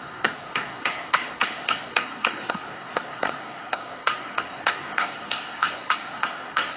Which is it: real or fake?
fake